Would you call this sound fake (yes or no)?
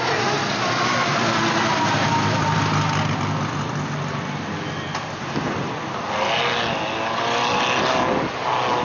no